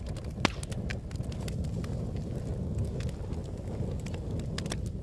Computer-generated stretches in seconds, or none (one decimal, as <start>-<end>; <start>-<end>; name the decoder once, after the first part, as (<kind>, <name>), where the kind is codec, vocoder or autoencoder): none